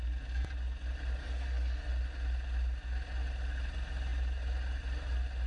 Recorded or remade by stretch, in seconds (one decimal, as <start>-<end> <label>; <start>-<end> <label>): 0.0-1.2 recorded; 1.2-1.9 remade; 1.9-5.5 recorded